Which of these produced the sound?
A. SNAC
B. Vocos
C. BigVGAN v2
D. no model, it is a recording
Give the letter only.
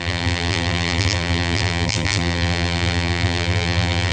C